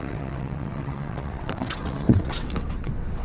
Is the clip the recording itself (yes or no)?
no